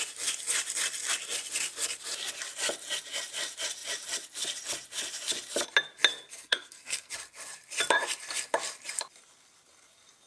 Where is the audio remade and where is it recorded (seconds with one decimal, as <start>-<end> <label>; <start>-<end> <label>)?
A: 0.0-6.3 recorded; 6.3-7.1 remade; 7.1-10.3 recorded